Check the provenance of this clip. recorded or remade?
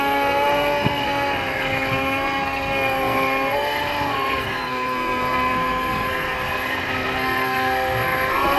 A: remade